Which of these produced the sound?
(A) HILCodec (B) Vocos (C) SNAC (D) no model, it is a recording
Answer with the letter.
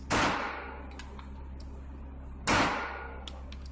D